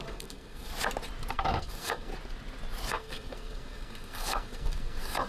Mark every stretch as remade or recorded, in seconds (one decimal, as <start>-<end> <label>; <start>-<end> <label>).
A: 0.0-0.7 remade; 0.7-1.3 recorded; 1.3-2.1 remade; 2.1-2.9 recorded; 2.9-5.3 remade